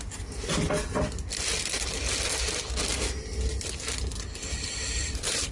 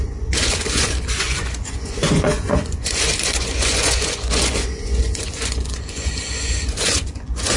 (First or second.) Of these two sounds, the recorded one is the first